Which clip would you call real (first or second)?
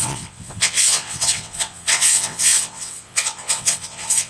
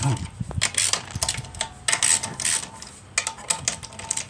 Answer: second